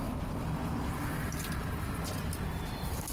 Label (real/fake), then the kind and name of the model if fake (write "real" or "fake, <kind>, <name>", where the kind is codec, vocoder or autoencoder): real